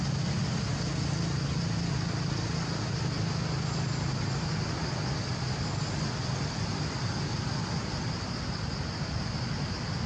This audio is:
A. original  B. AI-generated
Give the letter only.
A